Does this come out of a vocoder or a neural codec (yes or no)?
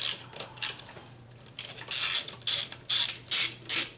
no